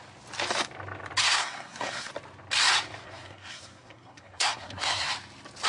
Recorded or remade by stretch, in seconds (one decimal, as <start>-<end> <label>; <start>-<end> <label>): 0.0-1.2 recorded; 1.2-2.1 remade; 2.1-3.0 recorded; 3.0-5.1 remade; 5.1-5.7 recorded